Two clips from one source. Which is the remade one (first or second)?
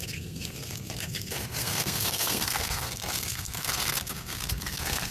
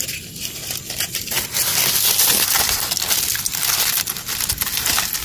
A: first